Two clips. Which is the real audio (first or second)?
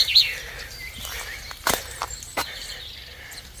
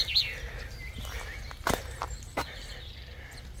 second